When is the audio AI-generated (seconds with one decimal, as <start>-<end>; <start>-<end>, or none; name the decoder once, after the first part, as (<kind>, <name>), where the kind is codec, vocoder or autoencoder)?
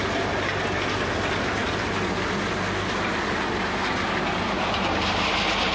none